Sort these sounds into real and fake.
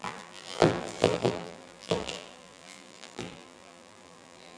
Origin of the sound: fake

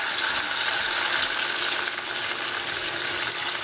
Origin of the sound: real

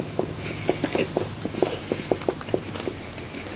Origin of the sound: real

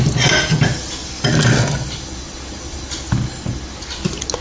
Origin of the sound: real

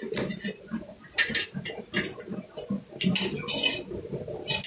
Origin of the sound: real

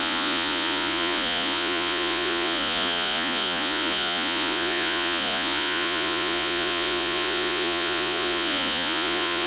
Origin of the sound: fake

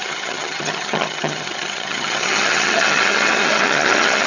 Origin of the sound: fake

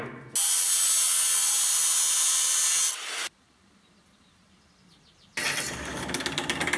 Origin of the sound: real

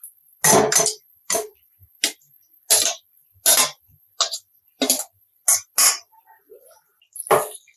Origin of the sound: real